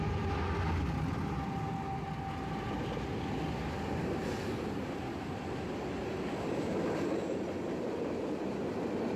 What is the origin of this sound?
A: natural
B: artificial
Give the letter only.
A